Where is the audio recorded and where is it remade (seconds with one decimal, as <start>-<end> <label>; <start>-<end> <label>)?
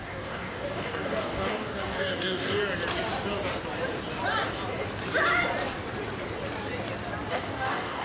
0.0-2.6 remade; 2.6-7.3 recorded; 7.3-8.0 remade